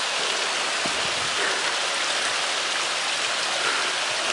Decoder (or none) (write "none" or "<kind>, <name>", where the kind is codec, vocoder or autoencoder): none